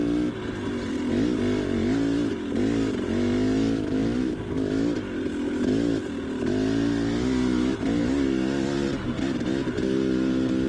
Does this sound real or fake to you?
real